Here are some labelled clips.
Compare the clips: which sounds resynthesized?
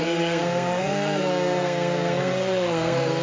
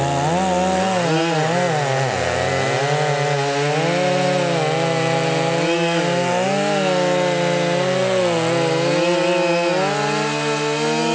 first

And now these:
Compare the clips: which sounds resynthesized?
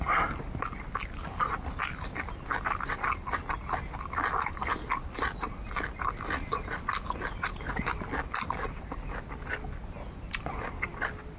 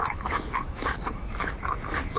second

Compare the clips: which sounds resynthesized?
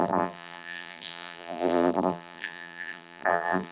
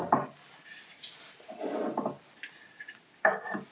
first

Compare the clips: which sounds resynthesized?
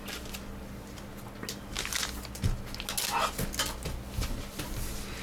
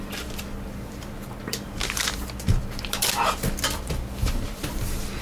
second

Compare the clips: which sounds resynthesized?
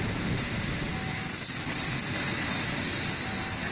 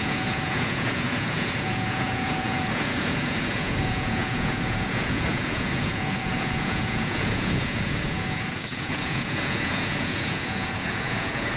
second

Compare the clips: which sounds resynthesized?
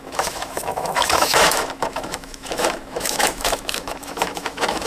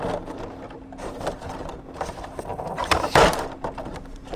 first